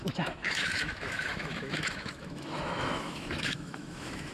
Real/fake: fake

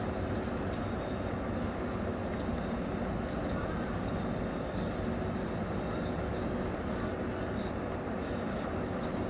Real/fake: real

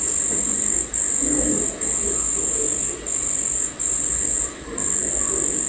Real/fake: real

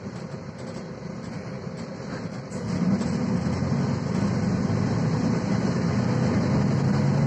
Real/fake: real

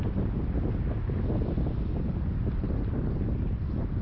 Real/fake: real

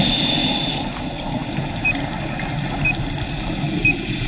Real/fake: real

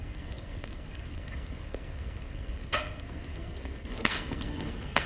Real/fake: fake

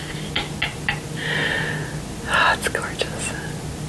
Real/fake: real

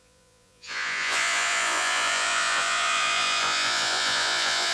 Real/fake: fake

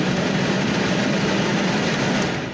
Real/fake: fake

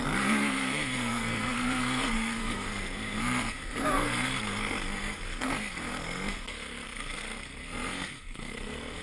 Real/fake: fake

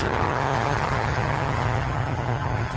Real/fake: fake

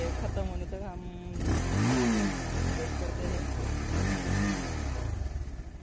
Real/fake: real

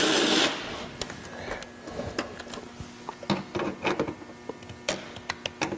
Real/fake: real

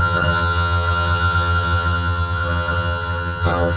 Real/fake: fake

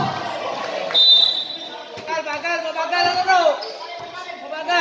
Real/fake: real